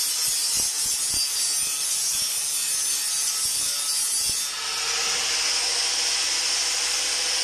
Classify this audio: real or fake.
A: real